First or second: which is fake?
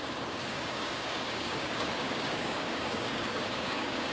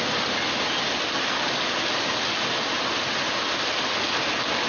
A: first